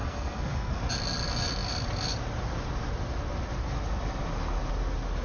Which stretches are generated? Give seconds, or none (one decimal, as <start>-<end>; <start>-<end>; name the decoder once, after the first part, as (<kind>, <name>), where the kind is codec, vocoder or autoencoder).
0.0-0.8 (codec, SNAC)